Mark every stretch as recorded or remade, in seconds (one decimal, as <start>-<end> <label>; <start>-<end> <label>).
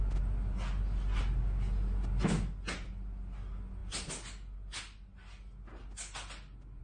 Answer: 0.0-6.8 recorded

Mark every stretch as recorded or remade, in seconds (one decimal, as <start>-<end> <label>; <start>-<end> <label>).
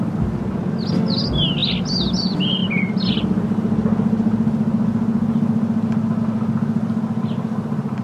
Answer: 0.0-8.0 recorded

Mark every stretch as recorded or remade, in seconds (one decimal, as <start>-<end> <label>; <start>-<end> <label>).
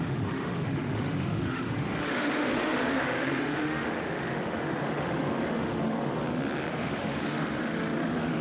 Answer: 0.0-6.1 remade; 6.1-6.7 recorded; 6.7-8.4 remade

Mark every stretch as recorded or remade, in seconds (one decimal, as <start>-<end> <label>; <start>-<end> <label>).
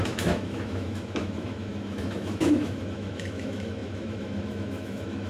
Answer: 0.0-5.3 remade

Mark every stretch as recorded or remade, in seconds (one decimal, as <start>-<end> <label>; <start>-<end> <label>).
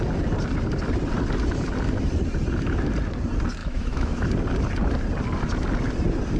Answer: 0.0-3.6 recorded; 3.6-4.3 remade; 4.3-6.4 recorded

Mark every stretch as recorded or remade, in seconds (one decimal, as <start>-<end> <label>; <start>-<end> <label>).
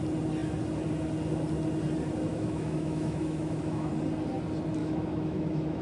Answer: 0.0-2.3 recorded; 2.3-3.9 remade; 3.9-4.8 recorded; 4.8-5.8 remade